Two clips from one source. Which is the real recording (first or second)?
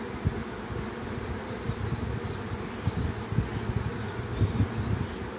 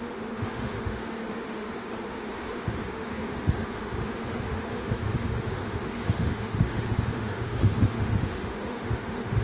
first